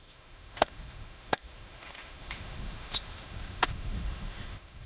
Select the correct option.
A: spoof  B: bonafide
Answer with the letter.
A